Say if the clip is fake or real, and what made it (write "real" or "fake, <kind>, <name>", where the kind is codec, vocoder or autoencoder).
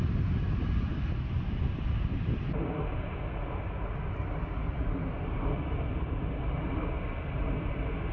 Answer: real